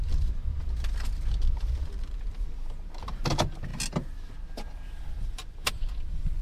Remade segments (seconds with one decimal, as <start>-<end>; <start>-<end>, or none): none